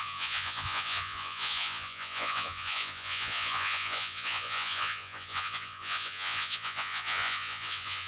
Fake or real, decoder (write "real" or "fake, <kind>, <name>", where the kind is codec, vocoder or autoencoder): fake, vocoder, Vocos